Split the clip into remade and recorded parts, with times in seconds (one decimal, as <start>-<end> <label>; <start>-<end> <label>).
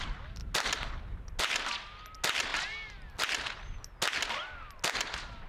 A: 0.0-5.5 recorded